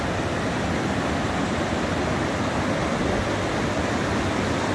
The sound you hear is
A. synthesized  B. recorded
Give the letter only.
B